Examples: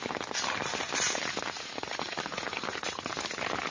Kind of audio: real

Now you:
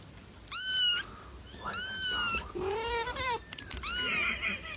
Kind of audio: real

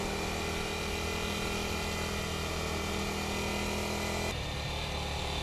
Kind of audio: real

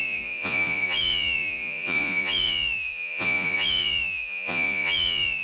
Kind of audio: fake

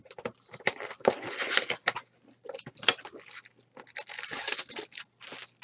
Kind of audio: real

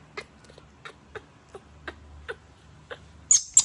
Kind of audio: real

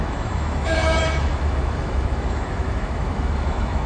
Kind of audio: fake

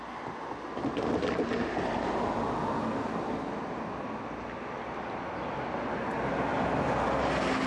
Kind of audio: real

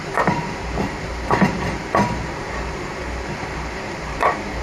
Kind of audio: fake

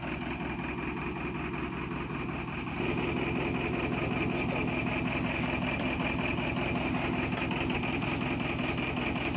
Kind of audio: real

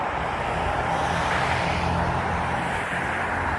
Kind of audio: real